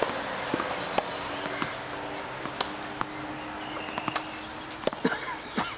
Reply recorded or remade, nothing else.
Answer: recorded